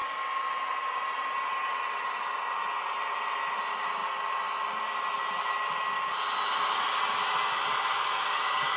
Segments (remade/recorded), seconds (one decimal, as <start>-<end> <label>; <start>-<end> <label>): 0.0-8.8 recorded